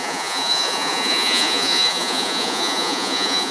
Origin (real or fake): fake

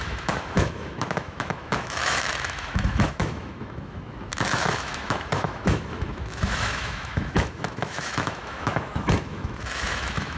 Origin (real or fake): fake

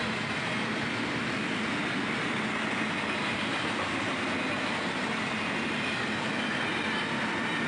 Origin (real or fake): real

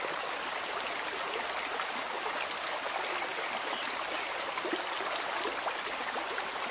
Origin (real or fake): real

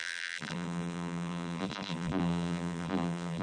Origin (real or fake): fake